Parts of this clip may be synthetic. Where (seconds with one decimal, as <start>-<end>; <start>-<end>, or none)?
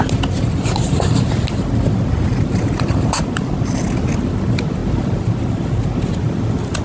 none